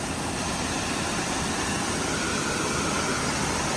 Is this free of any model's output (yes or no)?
yes